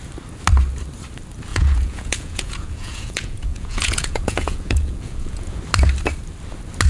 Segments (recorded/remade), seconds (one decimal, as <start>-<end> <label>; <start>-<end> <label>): 0.0-1.5 recorded; 1.5-5.6 remade; 5.6-6.9 recorded